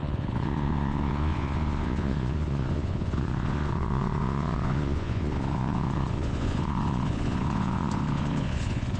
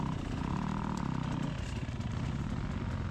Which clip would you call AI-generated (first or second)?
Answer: first